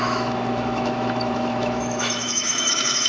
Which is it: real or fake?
fake